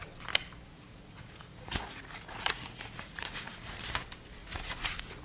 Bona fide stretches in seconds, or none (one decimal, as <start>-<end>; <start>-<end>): 0.0-0.7; 3.8-4.4